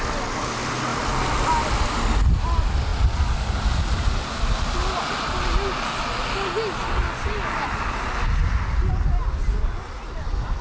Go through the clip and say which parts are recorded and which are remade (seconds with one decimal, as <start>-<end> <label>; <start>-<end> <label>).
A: 0.0-10.6 recorded